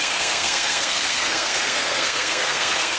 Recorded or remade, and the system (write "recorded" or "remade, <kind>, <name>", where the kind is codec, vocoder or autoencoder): remade, codec, SNAC